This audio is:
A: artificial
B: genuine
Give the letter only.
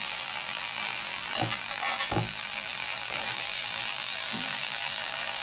A